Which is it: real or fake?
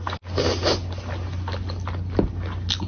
real